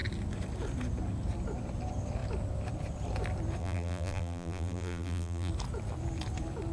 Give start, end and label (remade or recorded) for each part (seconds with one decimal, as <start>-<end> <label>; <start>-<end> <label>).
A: 0.0-3.6 recorded; 3.6-5.5 remade; 5.5-6.7 recorded